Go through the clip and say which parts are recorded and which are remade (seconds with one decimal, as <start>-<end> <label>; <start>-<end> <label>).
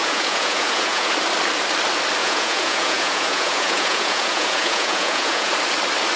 0.0-1.1 remade; 1.1-2.2 recorded; 2.2-5.5 remade; 5.5-6.2 recorded